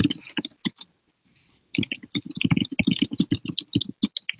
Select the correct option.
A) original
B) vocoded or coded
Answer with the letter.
A